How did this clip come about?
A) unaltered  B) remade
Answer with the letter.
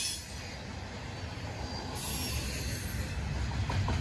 A